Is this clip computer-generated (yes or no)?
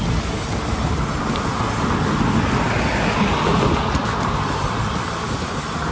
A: no